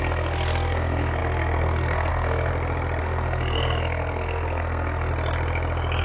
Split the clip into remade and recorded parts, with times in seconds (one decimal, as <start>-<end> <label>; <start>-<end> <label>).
0.0-2.5 remade; 2.5-3.0 recorded; 3.0-5.1 remade; 5.1-6.0 recorded